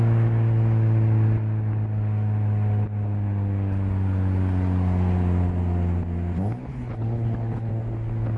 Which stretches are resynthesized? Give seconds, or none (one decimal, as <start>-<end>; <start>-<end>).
6.7-7.7